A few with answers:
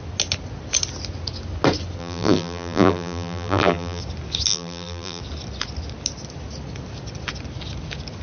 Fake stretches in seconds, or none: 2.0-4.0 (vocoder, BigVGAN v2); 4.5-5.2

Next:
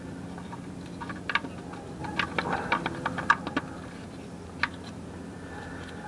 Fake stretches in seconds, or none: none

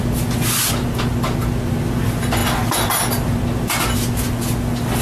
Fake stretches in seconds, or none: none

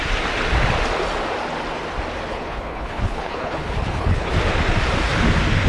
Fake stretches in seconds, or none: 2.3-4.3 (codec, HILCodec)

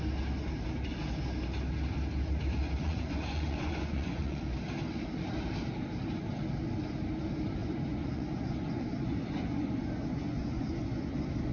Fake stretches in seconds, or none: 2.8-4.4 (vocoder, Vocos); 7.6-11.1